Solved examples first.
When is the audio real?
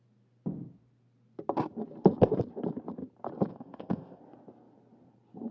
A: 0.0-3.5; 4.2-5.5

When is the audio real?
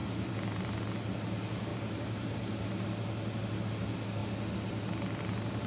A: 0.8-1.7; 2.4-5.7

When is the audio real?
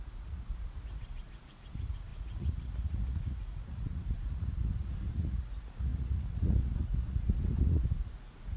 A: none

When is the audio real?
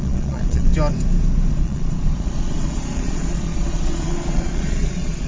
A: 0.7-1.5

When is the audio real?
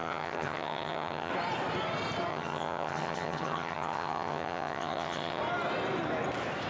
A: 1.3-2.3; 5.4-6.7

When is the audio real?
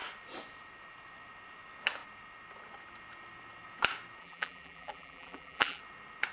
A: 0.0-4.2; 5.8-6.3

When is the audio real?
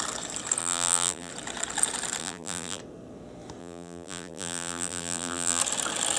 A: 0.0-0.6; 1.3-2.2; 2.8-3.6; 5.6-6.2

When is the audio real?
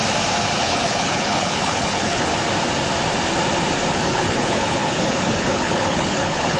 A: 0.0-0.6; 2.3-3.9